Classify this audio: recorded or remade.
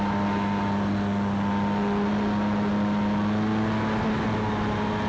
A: recorded